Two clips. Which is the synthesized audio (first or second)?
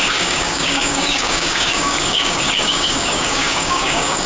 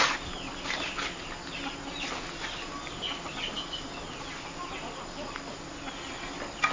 first